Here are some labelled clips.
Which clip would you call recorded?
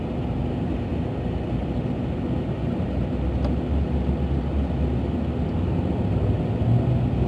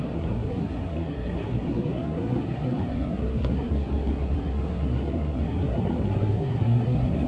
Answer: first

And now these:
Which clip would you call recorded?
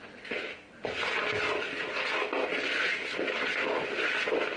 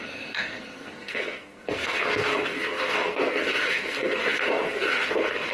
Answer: first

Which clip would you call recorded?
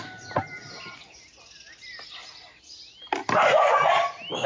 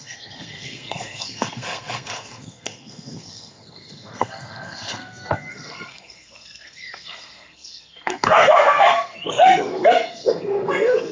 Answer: first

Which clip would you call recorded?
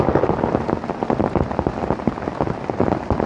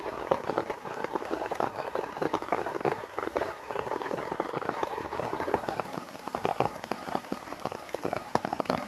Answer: first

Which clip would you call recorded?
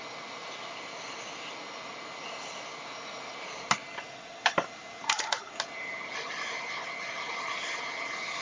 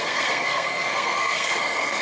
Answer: first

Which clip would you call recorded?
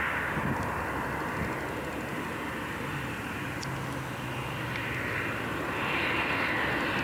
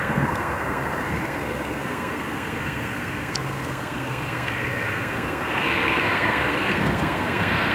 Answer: first